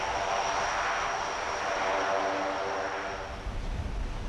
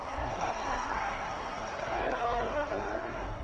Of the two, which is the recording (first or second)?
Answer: first